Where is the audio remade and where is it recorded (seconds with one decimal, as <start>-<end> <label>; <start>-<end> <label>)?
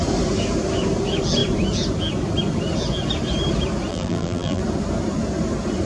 0.0-3.9 recorded; 3.9-4.6 remade; 4.6-5.9 recorded